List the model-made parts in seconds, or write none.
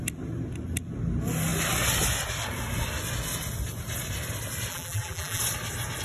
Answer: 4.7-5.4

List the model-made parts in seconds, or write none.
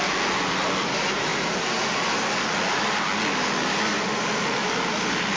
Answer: none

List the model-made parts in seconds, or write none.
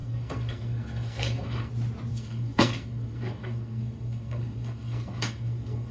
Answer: 0.0-1.7; 2.1-5.9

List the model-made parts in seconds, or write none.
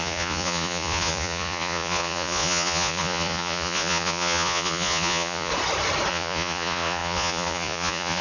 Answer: 0.0-5.5; 6.1-8.2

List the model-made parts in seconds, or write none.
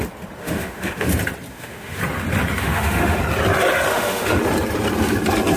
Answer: 0.4-1.1; 1.5-2.0; 2.6-3.2; 3.9-4.4